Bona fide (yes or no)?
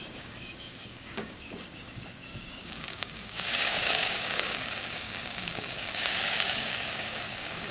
no